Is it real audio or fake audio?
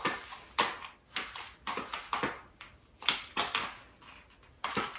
real